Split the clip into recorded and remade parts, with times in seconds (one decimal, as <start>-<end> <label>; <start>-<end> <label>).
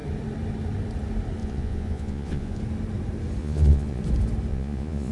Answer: 0.0-1.4 recorded; 1.4-2.6 remade; 2.6-3.4 recorded; 3.4-4.0 remade; 4.0-4.5 recorded; 4.5-5.1 remade